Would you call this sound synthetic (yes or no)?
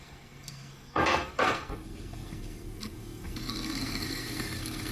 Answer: yes